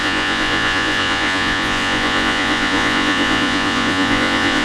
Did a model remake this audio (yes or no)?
yes